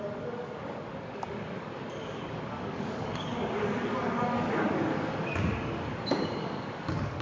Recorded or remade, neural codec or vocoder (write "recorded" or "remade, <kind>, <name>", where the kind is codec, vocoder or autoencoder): remade, codec, DAC